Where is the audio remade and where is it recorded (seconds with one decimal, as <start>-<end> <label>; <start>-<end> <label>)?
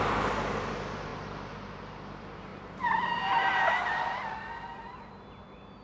0.0-1.1 recorded; 1.1-1.8 remade; 1.8-5.8 recorded